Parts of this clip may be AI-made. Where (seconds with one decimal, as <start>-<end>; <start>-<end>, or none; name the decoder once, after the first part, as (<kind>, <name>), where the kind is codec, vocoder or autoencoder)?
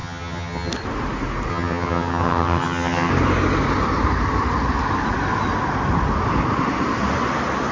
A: 0.0-0.7 (vocoder, HiFi-GAN); 1.5-3.1